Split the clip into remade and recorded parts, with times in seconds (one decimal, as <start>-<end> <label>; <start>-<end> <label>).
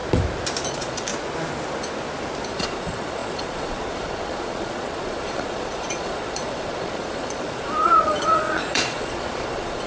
0.0-0.7 recorded; 0.7-1.1 remade; 1.1-2.5 recorded; 2.5-9.9 remade